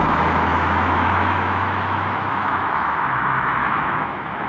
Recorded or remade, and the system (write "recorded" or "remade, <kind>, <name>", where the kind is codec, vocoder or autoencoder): remade, autoencoder, DAC-VAE